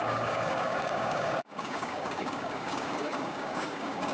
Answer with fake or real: fake